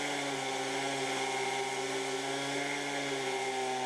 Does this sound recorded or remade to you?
recorded